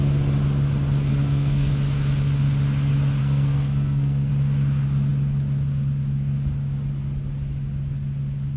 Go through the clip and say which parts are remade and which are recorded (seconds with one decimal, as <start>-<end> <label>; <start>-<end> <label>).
0.0-1.1 recorded; 1.1-1.7 remade; 1.7-3.2 recorded; 3.2-4.3 remade; 4.3-8.6 recorded